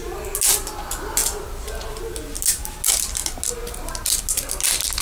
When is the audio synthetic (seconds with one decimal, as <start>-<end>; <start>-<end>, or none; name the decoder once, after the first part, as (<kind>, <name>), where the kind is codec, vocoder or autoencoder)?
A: none